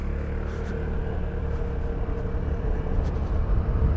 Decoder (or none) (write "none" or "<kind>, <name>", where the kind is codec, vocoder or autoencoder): none